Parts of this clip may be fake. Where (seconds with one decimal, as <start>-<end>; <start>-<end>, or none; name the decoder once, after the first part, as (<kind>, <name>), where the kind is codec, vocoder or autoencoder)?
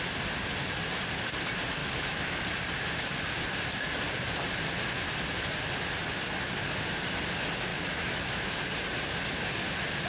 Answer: 1.8-2.4 (autoencoder, DAC-VAE); 7.7-8.6